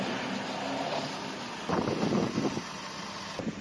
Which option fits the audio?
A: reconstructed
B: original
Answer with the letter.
B